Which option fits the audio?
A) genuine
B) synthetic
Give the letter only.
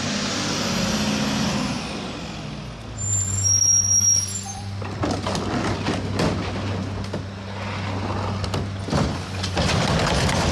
A